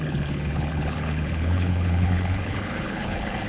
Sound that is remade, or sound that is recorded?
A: remade